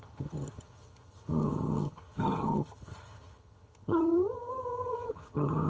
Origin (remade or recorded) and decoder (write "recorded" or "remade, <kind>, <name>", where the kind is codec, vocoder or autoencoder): remade, vocoder, HiFi-GAN